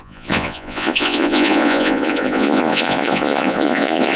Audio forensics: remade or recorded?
remade